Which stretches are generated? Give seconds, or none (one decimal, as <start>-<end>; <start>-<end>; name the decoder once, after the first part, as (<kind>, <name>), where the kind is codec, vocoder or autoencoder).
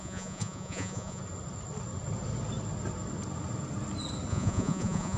0.0-1.2 (vocoder, Vocos); 4.3-5.2